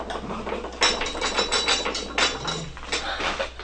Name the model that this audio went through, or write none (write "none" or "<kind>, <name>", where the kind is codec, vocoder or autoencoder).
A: none